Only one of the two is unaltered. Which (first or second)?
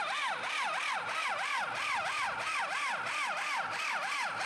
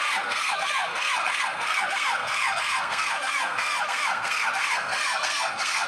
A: first